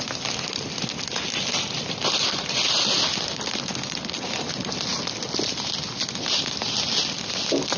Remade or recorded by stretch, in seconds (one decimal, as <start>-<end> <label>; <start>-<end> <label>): 0.0-7.8 recorded